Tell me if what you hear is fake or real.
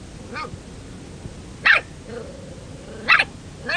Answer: real